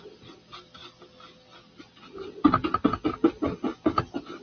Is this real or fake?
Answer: real